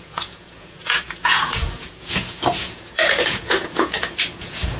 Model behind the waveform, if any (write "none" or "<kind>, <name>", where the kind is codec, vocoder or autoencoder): vocoder, Vocos